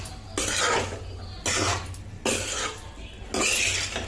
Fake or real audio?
real